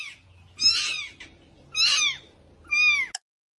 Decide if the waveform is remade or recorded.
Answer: recorded